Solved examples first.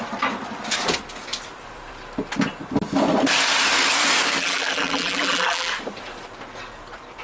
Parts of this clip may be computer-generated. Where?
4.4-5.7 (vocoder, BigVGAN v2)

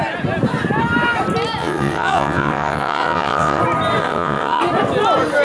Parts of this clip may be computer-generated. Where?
1.6-3.6 (vocoder, WaveNeXt); 4.0-4.6

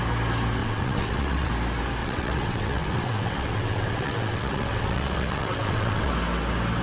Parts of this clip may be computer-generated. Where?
0.6-1.5 (vocoder, WaveNeXt); 2.0-6.1

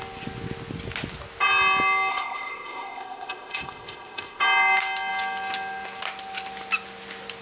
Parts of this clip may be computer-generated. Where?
2.1-4.4 (codec, ZipCodec)